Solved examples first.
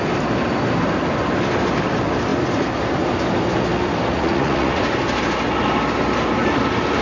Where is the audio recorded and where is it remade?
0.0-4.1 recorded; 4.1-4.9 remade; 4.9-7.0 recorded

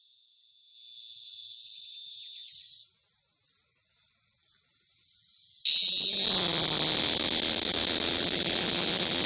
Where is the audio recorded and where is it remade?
0.0-9.3 recorded

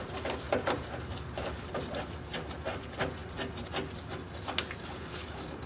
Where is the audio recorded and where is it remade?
0.0-5.7 recorded

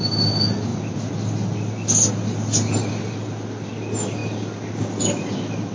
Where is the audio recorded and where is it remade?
0.0-5.7 recorded

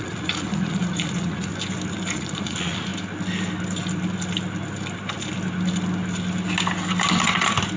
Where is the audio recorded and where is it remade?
0.0-1.5 remade; 1.5-2.1 recorded; 2.1-2.9 remade; 2.9-7.8 recorded